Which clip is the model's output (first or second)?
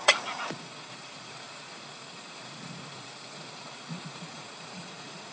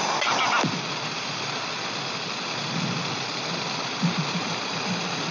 first